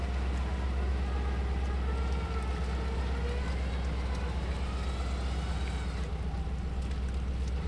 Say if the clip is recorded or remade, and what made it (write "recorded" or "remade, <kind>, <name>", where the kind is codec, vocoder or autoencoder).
recorded